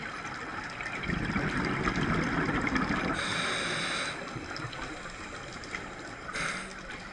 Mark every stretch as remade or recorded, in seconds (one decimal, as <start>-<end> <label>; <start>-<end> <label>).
0.0-7.1 recorded